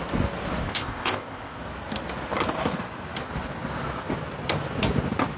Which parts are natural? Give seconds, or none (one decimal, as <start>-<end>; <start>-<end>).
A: 0.0-0.6; 1.6-5.4

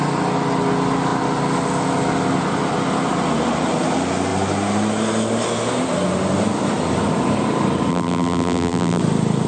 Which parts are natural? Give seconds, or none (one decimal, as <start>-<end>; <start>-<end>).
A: 0.0-7.9; 9.0-9.5

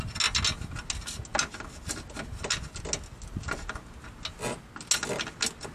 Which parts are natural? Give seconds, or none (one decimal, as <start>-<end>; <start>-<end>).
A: 0.0-5.7